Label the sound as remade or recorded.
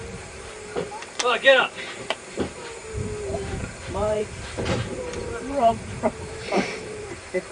remade